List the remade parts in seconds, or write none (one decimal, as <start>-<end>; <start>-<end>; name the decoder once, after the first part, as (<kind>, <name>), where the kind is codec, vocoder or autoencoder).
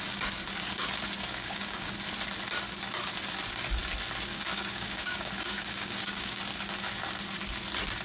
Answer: 1.3-1.9 (codec, DAC); 4.3-6.4